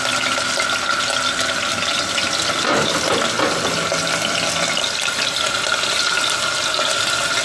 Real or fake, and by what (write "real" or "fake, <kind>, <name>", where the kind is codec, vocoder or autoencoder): real